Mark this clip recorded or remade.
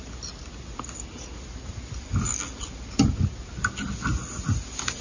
recorded